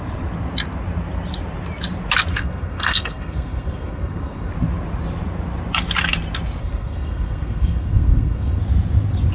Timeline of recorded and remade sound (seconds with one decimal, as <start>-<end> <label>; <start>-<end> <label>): 0.0-2.3 recorded; 2.3-4.5 remade; 4.5-6.6 recorded; 6.6-8.6 remade; 8.6-9.3 recorded

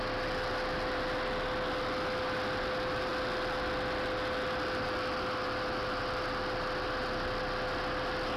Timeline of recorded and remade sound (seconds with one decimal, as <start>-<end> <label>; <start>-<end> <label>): 0.0-8.4 recorded

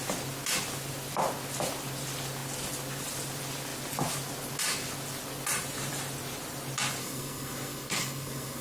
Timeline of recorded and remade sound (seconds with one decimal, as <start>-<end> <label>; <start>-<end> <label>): 0.0-7.0 recorded; 7.0-8.6 remade

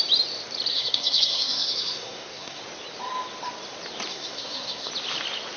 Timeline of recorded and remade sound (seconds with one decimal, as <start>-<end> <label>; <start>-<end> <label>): 0.0-0.7 recorded; 0.7-2.6 remade; 2.6-4.1 recorded; 4.1-4.9 remade; 4.9-5.6 recorded

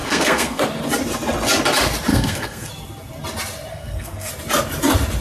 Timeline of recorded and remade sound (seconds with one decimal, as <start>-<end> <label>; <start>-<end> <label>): 0.0-0.6 remade; 0.6-2.1 recorded; 2.1-2.7 remade; 2.7-3.7 recorded; 3.7-4.3 remade; 4.3-5.2 recorded

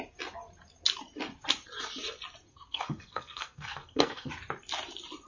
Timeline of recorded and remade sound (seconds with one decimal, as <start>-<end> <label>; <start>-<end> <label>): 0.0-2.5 recorded; 2.5-4.3 remade; 4.3-5.3 recorded

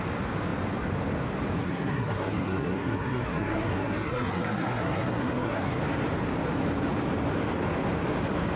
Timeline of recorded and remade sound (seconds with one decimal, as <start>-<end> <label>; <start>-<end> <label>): 0.0-1.6 recorded; 1.6-5.8 remade; 5.8-8.6 recorded

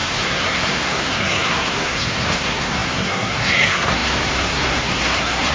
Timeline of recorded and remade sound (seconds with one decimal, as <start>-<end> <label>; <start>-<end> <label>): 0.0-5.5 remade